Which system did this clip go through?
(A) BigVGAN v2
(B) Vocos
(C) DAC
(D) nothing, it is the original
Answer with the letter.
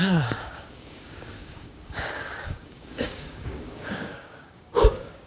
C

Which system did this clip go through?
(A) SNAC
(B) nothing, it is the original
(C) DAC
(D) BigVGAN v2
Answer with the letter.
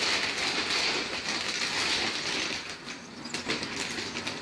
B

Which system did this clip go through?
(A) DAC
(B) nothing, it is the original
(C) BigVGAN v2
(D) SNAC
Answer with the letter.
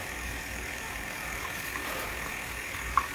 A